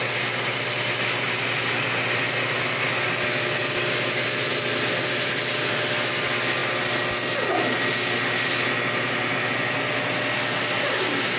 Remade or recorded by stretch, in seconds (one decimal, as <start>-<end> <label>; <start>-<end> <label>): 0.0-11.4 recorded